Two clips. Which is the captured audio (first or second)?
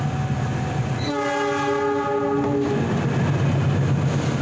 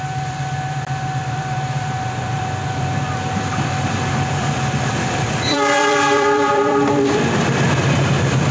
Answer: first